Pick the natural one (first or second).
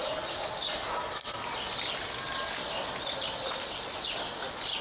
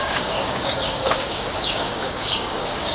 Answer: first